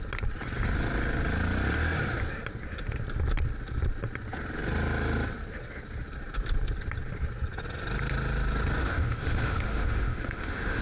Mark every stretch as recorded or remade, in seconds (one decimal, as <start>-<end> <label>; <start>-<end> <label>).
0.0-8.8 recorded; 8.8-10.8 remade